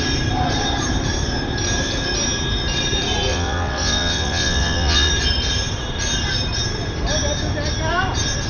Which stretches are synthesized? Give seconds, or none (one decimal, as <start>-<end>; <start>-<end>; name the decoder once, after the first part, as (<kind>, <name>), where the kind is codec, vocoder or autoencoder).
3.3-5.1 (vocoder, WaveNeXt)